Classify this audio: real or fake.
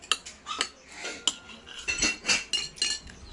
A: real